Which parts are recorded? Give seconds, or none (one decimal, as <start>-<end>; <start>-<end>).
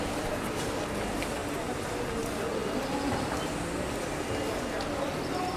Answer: 0.0-5.6